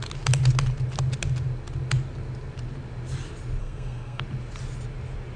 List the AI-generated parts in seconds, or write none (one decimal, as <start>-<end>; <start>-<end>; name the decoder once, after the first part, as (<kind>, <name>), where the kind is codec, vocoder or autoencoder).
3.6-4.2 (codec, SNAC)